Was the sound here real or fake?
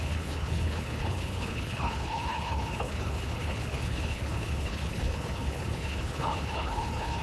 fake